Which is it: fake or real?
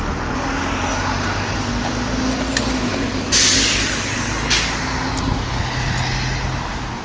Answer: real